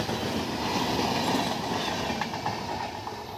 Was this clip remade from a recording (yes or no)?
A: no